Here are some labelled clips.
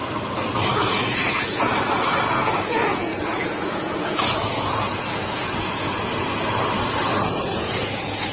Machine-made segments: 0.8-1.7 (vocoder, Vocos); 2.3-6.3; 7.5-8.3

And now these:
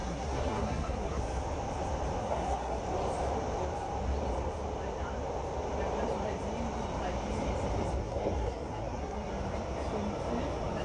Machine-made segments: 0.0-1.2 (codec, SNAC); 2.2-2.8; 8.0-9.3

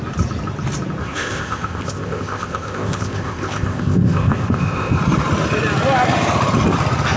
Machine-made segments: 1.0-5.0 (codec, ZipCodec)

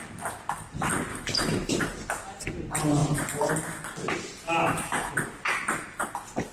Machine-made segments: 1.1-1.7 (autoencoder, DAC-VAE); 4.6-5.1

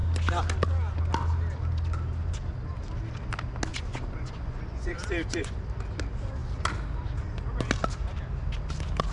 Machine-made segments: 3.7-5.6 (vocoder, Vocos)